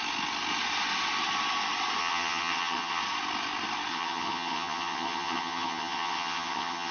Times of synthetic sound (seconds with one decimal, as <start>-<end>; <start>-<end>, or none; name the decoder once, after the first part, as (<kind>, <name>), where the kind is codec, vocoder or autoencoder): 2.0-3.0 (vocoder, HiFi-GAN); 3.9-6.9

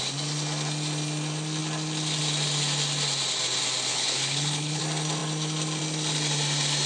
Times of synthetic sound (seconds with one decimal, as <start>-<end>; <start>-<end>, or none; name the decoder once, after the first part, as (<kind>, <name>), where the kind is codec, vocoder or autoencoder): 3.9-4.8 (codec, HILCodec)

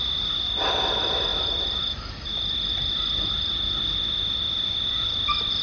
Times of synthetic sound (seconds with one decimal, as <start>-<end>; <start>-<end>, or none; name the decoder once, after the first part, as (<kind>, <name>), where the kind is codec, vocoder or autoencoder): none